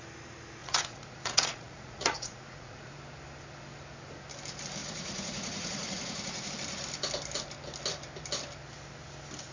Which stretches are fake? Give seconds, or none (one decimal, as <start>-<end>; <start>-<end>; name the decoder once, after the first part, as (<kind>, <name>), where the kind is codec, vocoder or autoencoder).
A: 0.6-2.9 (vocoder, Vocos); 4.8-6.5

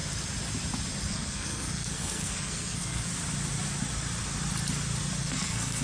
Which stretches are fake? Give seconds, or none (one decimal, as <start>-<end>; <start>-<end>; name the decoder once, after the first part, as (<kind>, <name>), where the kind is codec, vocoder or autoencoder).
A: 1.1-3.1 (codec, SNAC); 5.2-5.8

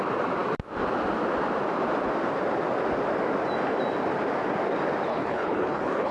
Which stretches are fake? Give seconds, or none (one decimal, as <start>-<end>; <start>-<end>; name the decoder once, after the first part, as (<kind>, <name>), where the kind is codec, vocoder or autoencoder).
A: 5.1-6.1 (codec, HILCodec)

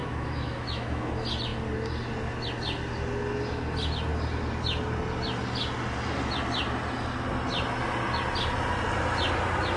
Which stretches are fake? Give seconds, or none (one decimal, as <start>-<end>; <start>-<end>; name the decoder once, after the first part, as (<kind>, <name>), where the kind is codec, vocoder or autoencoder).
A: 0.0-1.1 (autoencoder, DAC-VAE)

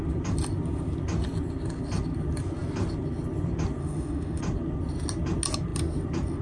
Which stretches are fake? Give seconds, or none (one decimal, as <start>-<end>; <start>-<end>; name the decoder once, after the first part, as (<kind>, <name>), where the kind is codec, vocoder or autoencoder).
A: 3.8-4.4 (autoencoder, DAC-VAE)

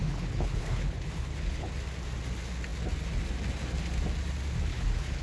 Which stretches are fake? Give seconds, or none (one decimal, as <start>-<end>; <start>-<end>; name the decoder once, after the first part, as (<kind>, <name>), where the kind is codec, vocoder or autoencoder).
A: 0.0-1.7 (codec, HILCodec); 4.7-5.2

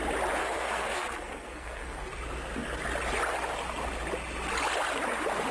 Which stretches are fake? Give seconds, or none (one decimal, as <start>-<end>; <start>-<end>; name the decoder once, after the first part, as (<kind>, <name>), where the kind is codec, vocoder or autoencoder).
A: 0.4-2.0 (codec, SNAC)